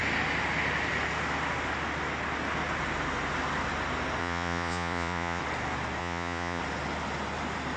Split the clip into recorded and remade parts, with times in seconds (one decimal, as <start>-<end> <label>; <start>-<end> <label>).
0.0-4.2 recorded; 4.2-5.4 remade; 5.4-6.0 recorded; 6.0-6.6 remade; 6.6-7.8 recorded